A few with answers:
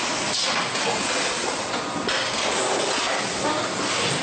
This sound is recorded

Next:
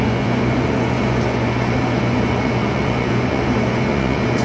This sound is remade